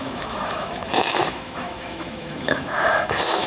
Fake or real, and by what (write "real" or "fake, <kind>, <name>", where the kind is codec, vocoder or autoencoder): fake, autoencoder, DAC-VAE